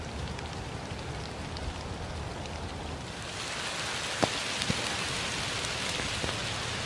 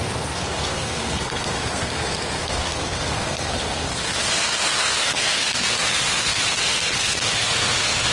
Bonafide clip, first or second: first